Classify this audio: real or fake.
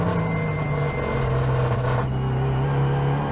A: real